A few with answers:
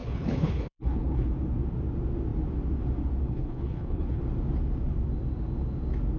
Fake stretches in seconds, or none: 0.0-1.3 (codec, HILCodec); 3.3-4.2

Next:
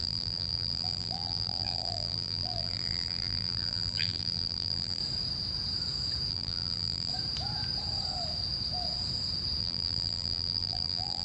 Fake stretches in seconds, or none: 0.0-5.0 (vocoder, BigVGAN v2); 6.3-7.1; 9.6-11.2

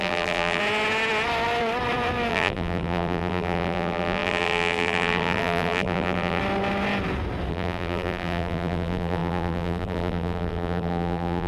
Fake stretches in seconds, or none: 0.0-0.6 (vocoder, BigVGAN v2); 2.3-6.4; 7.5-11.5

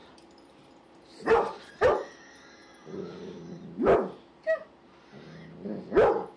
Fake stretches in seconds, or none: 0.0-1.7 (vocoder, BigVGAN v2)

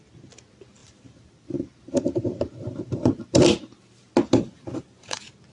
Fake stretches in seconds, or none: 0.8-4.1 (vocoder, BigVGAN v2)

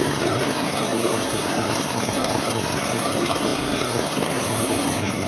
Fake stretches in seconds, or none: 0.0-5.3 (codec, SNAC)

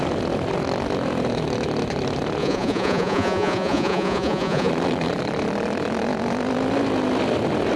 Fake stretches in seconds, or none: 2.4-4.7 (vocoder, Vocos)